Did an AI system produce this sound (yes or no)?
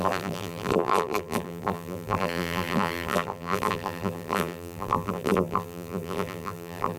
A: yes